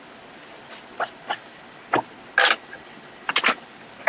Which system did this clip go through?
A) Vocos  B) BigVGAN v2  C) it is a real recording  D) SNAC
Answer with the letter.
C